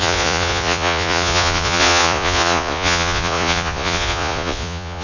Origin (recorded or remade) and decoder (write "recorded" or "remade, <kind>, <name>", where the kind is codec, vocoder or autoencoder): remade, vocoder, Vocos